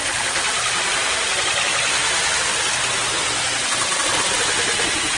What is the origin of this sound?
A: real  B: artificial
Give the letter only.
A